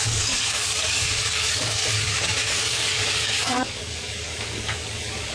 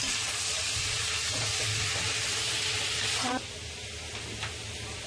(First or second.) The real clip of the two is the second